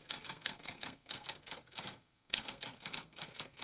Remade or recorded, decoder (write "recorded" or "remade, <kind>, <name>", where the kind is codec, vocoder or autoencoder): remade, codec, SNAC